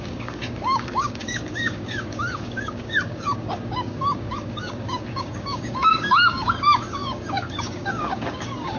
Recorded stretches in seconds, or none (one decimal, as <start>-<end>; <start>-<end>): none